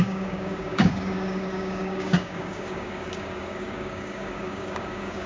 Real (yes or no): no